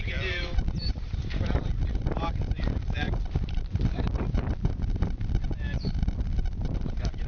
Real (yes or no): no